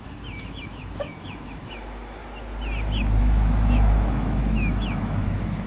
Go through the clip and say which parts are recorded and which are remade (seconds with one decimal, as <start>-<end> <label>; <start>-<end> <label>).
0.0-2.2 remade; 2.2-3.2 recorded; 3.2-5.7 remade